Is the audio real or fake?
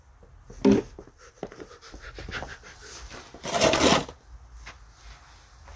real